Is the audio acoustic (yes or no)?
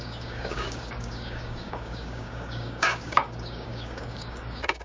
no